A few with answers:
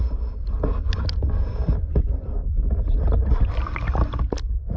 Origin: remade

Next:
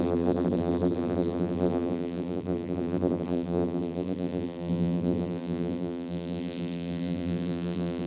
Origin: remade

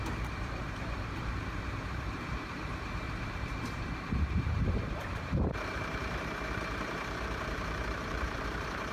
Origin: remade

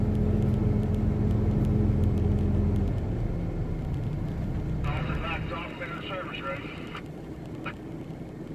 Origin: recorded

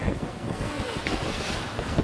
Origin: remade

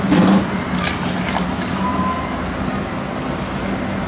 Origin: recorded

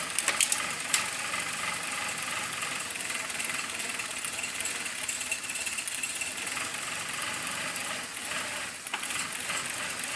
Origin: recorded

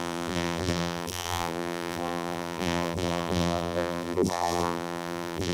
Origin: remade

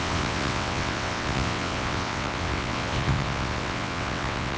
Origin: remade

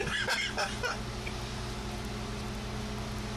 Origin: recorded